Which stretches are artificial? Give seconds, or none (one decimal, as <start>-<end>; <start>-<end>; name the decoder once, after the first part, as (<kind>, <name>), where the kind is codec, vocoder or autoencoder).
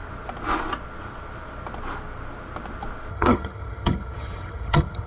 3.1-5.1 (vocoder, HiFi-GAN)